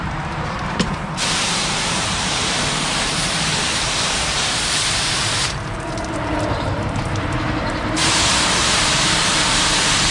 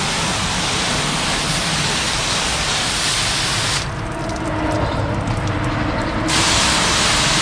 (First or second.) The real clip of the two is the second